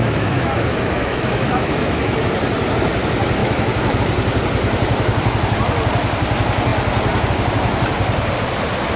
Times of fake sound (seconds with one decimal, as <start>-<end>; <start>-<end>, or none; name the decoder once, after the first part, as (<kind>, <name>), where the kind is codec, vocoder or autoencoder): 0.0-2.3 (autoencoder, DAC-VAE); 3.4-4.0